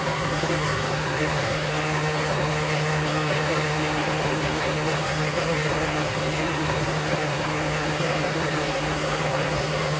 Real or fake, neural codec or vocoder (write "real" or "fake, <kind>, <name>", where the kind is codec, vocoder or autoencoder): fake, codec, SNAC